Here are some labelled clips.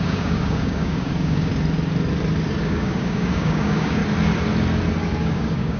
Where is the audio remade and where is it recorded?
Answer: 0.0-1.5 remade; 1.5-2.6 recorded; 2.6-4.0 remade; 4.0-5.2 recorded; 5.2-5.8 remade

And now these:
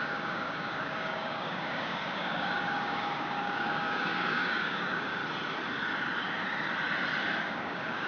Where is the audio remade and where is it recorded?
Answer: 0.0-5.2 remade; 5.2-7.4 recorded; 7.4-8.1 remade

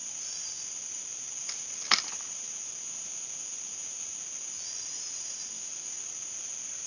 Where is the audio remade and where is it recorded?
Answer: 0.0-6.9 recorded